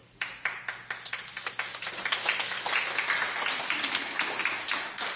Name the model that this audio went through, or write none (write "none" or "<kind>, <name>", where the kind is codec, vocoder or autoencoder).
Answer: none